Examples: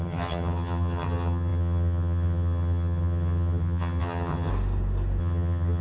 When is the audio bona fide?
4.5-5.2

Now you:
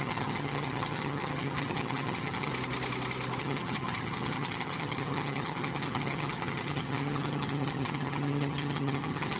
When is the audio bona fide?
2.5-3.4

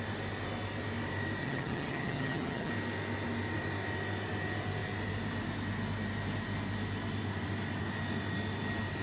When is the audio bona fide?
0.0-1.4; 2.7-9.0

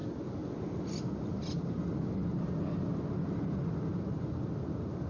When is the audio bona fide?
0.0-5.1

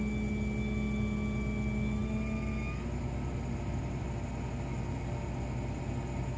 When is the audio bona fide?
0.0-6.4

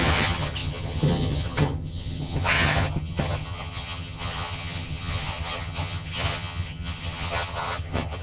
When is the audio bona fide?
none